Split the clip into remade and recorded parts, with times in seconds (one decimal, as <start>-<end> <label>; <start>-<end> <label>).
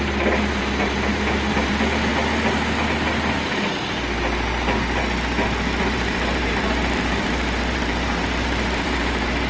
0.0-2.1 remade; 2.1-5.8 recorded; 5.8-9.5 remade